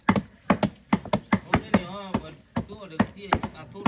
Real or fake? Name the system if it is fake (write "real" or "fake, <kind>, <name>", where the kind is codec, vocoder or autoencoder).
real